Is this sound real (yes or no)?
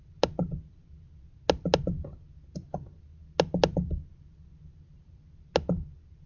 yes